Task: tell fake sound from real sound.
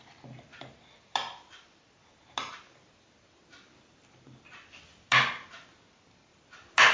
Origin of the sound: real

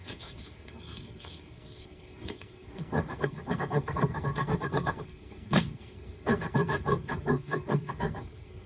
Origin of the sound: fake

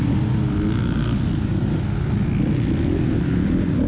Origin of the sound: real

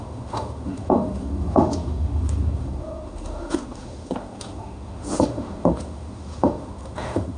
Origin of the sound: fake